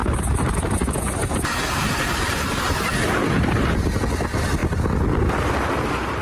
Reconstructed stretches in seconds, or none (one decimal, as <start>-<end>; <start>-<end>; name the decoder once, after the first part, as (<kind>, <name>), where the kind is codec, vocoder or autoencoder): 0.0-2.6 (vocoder, BigVGAN v2); 3.2-3.8